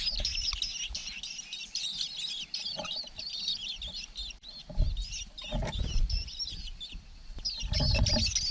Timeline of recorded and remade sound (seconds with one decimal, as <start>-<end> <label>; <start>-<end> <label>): 0.0-8.5 recorded